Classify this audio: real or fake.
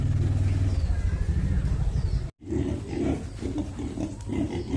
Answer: real